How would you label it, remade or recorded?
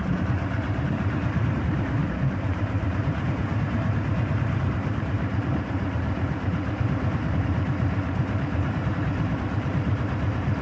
remade